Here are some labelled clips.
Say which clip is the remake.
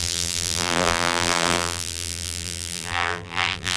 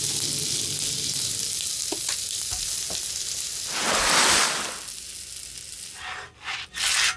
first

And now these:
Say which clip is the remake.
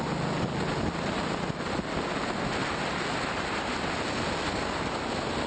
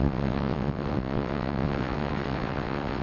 second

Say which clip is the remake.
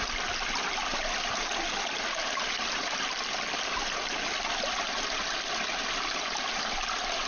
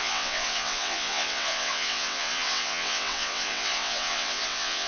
second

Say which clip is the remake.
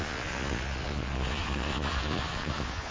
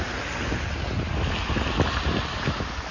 first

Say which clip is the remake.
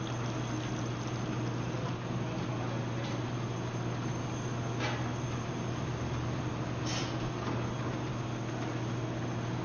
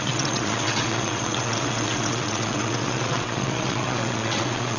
second